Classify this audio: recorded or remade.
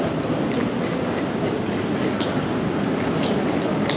recorded